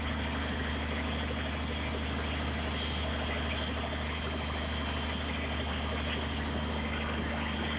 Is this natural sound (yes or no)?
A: yes